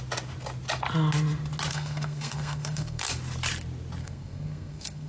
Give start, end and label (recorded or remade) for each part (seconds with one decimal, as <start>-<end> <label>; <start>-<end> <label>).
0.0-1.7 recorded; 1.7-3.0 remade; 3.0-4.0 recorded; 4.0-5.1 remade